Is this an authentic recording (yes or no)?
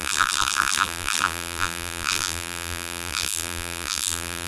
no